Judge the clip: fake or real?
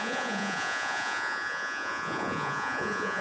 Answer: fake